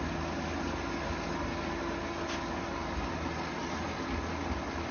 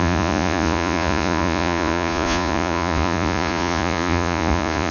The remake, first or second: second